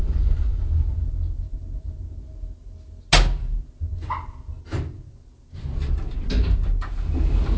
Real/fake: real